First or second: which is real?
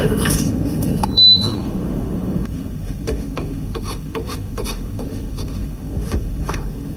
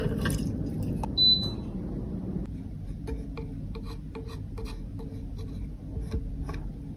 second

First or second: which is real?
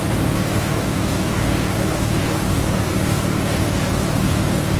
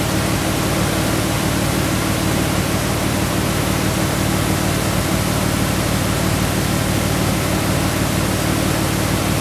second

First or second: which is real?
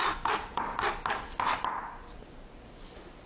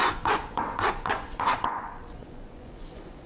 first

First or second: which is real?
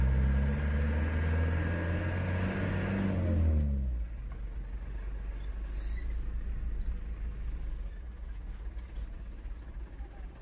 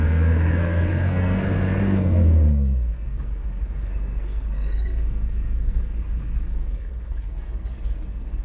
first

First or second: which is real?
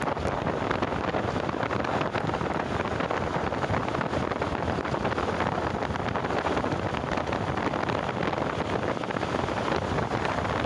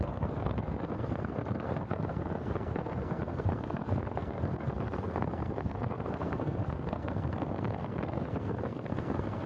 first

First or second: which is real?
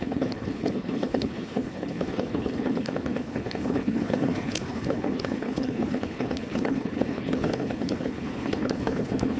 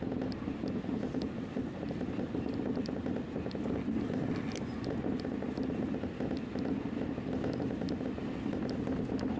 second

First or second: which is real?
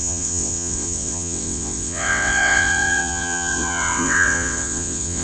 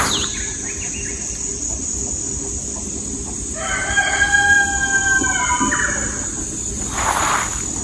second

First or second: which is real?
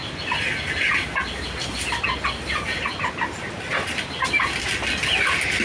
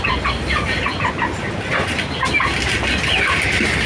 first